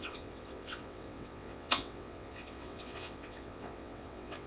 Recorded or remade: remade